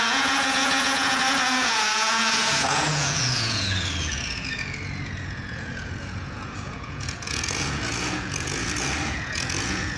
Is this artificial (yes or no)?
yes